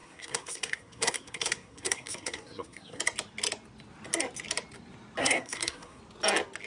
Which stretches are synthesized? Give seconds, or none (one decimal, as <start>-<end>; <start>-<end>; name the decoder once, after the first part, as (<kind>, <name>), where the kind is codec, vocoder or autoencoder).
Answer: 0.0-3.0 (codec, SNAC); 5.2-6.0